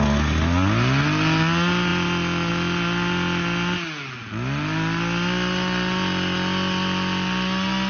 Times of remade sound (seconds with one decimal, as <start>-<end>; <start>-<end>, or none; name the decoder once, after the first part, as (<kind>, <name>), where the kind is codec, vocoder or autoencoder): none